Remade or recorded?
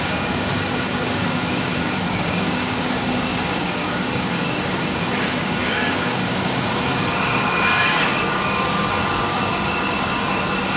remade